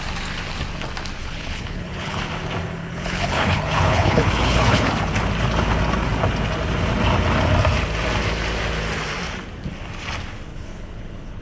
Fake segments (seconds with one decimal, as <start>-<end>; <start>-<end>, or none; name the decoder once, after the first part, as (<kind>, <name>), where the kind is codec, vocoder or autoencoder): 1.2-2.2 (codec, HILCodec); 2.8-4.9; 10.5-11.4